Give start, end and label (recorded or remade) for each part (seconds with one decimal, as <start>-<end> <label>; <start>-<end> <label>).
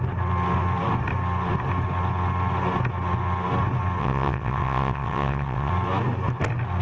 0.0-4.0 recorded; 4.0-5.7 remade; 5.7-6.8 recorded